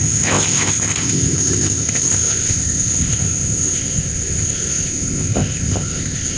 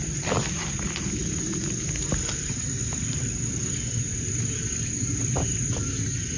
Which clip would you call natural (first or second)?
second